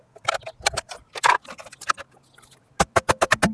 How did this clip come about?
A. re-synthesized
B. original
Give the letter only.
B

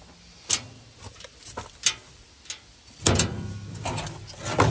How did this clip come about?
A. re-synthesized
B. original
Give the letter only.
B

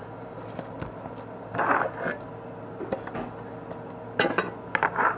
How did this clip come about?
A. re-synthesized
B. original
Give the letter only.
B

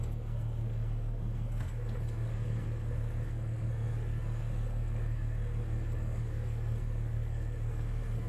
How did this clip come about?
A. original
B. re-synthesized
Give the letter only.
B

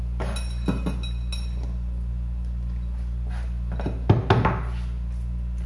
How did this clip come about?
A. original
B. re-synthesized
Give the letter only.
A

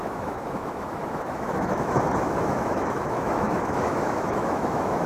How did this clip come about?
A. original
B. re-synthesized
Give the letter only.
B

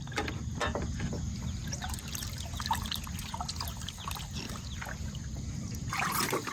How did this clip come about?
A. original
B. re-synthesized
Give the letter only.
A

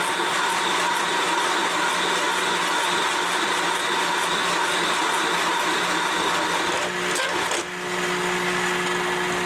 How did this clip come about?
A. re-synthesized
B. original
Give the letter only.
B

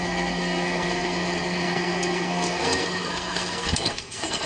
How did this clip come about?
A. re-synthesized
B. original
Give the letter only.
A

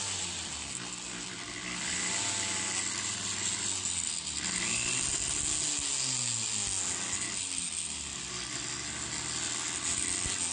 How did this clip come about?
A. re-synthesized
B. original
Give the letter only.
B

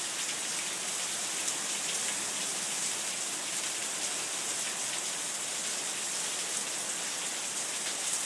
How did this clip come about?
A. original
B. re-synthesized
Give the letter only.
A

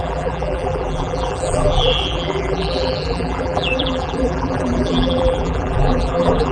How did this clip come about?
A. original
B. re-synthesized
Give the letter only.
B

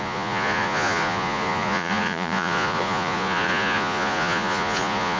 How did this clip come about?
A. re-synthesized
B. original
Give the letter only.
A